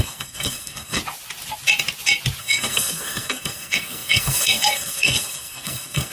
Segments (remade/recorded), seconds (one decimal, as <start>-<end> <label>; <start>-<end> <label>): 0.0-1.0 remade; 1.0-2.4 recorded; 2.4-6.1 remade